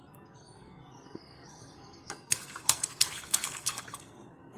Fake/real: fake